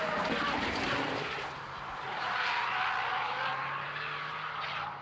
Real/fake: real